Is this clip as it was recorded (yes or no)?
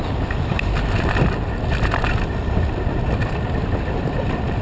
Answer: yes